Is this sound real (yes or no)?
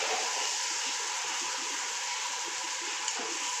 yes